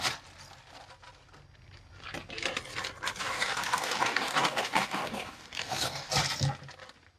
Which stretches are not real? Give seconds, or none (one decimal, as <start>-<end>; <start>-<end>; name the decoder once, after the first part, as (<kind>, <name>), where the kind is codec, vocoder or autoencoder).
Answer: 3.2-6.1 (codec, DAC)